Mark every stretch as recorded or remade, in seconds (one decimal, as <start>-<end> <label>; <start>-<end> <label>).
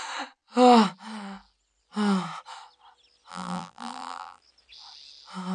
0.0-3.3 recorded; 3.3-4.4 remade; 4.4-5.5 recorded